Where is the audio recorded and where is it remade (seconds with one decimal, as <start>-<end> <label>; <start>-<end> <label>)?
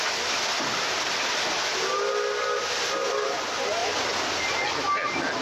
0.0-5.4 recorded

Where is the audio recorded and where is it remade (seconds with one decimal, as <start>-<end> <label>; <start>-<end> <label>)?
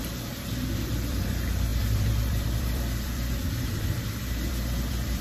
0.0-5.2 remade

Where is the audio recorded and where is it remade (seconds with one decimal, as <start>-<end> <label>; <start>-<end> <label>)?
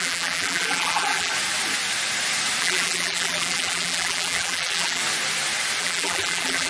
0.0-1.3 remade; 1.3-2.6 recorded; 2.6-5.0 remade; 5.0-5.8 recorded; 5.8-6.7 remade